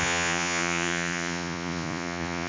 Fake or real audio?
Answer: fake